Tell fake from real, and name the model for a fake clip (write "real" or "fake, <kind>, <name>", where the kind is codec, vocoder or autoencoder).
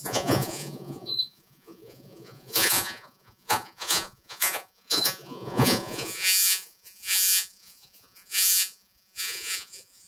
fake, vocoder, Vocos